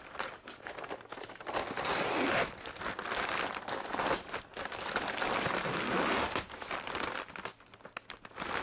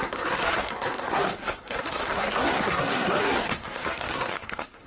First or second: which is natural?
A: first